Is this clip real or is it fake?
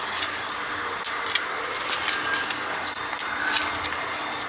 real